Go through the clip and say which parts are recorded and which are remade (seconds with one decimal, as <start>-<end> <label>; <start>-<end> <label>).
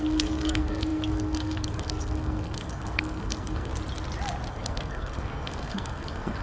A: 0.0-3.7 remade; 3.7-4.5 recorded; 4.5-6.4 remade